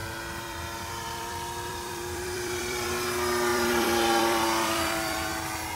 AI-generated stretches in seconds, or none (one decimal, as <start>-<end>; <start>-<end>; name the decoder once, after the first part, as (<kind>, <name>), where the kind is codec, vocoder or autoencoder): 0.0-2.9 (vocoder, BigVGAN v2); 3.5-5.3